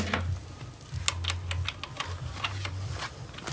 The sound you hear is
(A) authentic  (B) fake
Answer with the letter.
A